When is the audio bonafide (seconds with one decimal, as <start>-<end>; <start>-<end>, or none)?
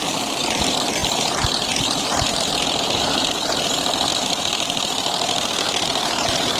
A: 0.0-4.1; 5.8-6.6